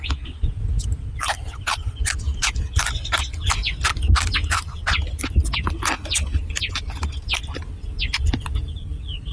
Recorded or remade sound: recorded